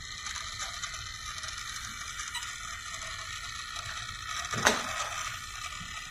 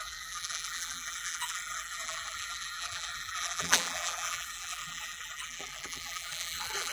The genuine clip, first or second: first